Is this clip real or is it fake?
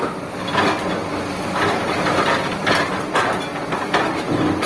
real